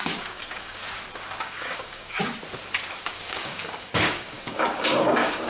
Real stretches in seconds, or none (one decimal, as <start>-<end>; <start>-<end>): 0.8-1.4; 2.2-3.1